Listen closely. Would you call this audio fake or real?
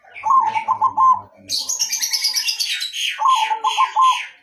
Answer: real